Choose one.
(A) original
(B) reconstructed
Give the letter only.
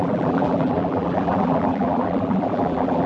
B